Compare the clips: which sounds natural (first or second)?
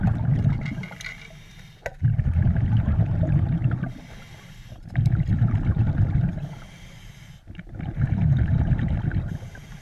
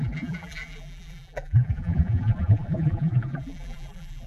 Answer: first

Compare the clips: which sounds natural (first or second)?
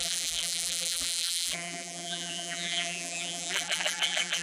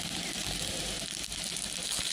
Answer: second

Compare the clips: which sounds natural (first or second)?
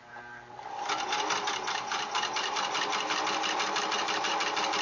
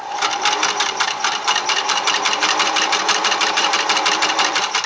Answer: first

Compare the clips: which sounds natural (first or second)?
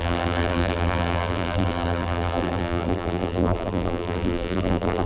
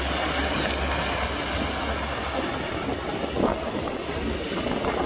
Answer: second